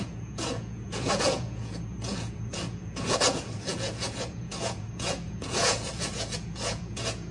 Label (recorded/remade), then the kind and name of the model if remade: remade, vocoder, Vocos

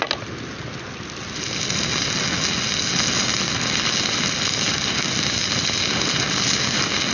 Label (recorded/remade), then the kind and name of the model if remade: recorded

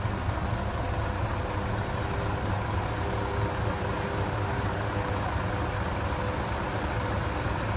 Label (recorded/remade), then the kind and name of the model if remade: recorded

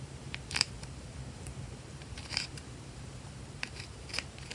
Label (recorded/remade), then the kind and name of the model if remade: remade, vocoder, BigVGAN v2